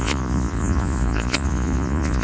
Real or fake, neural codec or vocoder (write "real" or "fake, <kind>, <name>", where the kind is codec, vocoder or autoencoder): fake, vocoder, Vocos